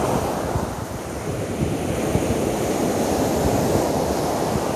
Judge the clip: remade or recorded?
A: remade